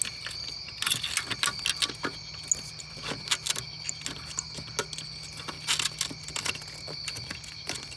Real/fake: real